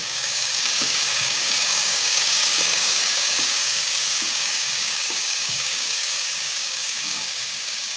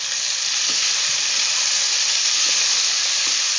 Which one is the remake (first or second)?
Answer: first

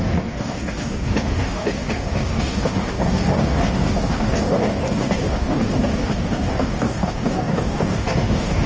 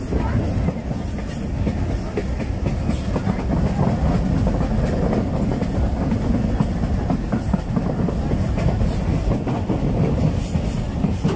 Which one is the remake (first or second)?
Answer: first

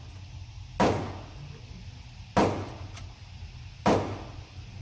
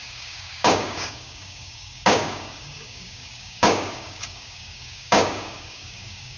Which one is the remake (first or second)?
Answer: second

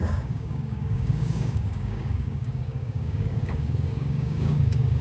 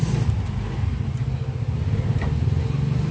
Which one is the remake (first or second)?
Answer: first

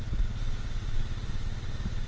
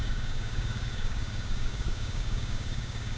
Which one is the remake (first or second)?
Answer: second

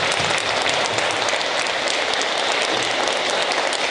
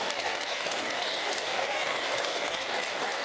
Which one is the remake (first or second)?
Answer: second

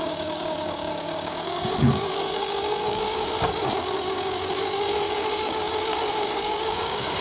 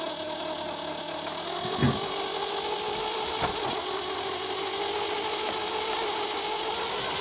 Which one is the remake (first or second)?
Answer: first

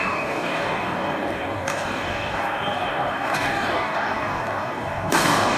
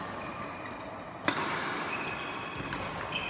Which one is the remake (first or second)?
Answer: first